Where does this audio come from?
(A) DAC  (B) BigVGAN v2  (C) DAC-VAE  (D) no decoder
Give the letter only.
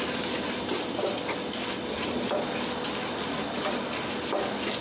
D